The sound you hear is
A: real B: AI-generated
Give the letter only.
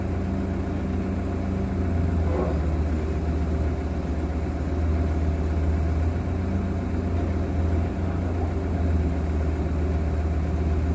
A